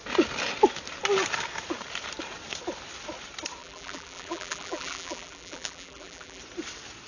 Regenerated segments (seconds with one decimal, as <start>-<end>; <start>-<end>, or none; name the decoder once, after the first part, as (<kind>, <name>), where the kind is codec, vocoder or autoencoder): 3.6-6.4 (vocoder, BigVGAN v2)